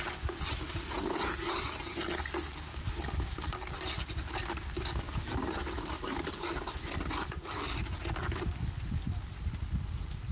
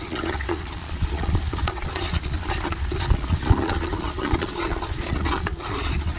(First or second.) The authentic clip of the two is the first